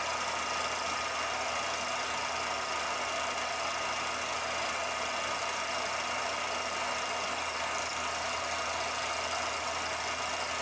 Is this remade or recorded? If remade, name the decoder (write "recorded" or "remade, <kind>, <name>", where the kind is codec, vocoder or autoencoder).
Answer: recorded